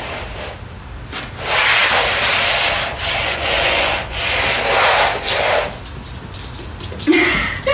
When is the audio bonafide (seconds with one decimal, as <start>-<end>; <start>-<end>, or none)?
0.0-3.2; 4.2-7.7